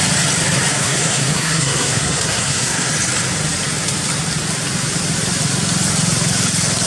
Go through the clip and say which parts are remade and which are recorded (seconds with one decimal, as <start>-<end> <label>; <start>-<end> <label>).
0.0-0.7 recorded; 0.7-2.9 remade; 2.9-6.9 recorded